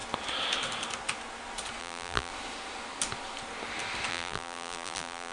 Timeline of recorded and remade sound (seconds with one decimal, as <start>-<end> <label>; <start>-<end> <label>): 0.0-1.8 recorded; 1.8-2.3 remade; 2.3-4.1 recorded; 4.1-5.3 remade